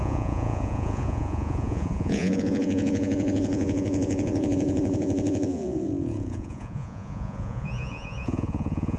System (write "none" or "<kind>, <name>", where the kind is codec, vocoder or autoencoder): vocoder, Vocos